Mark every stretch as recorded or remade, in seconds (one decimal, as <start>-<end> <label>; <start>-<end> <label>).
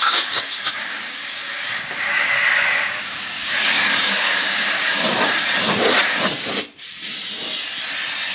0.0-5.0 remade; 5.0-8.3 recorded